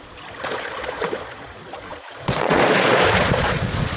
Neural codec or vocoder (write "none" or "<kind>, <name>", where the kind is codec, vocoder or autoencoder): vocoder, Vocos